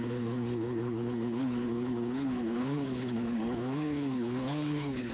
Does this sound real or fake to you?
fake